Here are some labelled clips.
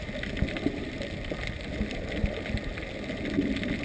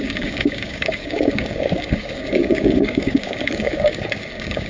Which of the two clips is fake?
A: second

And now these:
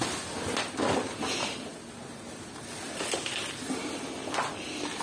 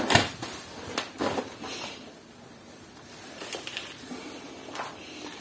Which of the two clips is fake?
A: second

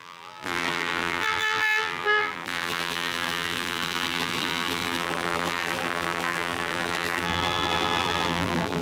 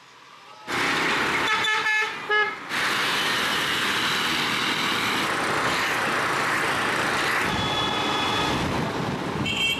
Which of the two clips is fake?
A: first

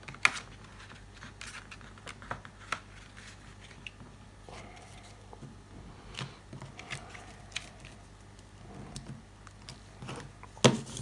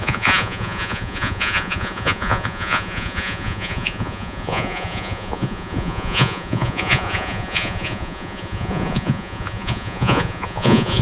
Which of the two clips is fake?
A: second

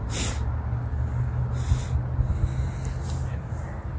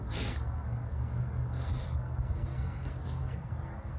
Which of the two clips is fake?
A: second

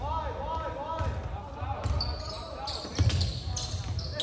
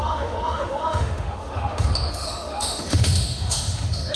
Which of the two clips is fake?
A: second